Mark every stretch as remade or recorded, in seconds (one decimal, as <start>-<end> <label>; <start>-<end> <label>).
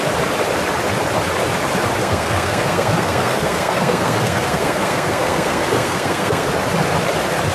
0.0-2.0 recorded; 2.0-6.5 remade; 6.5-7.5 recorded